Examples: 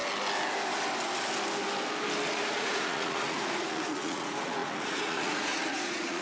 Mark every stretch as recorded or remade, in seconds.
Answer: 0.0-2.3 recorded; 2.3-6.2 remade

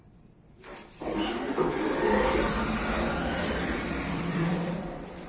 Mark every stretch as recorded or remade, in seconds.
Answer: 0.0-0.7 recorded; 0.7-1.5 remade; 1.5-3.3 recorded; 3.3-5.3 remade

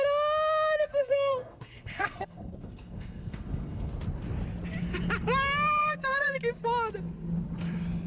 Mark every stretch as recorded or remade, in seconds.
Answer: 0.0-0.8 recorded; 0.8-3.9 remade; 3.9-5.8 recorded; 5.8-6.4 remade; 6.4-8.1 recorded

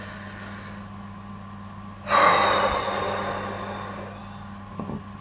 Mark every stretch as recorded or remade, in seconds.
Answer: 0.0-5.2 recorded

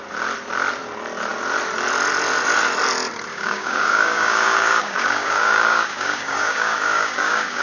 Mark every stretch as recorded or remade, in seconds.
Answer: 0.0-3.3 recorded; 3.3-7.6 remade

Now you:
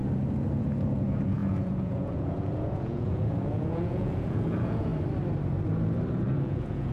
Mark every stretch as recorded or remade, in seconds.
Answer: 0.0-0.6 recorded; 0.6-4.9 remade; 4.9-6.1 recorded; 6.1-6.9 remade

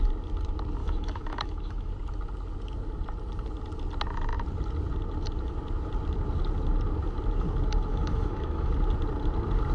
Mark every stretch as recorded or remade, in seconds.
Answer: 0.0-0.8 recorded; 0.8-1.9 remade; 1.9-7.9 recorded; 7.9-8.7 remade; 8.7-9.7 recorded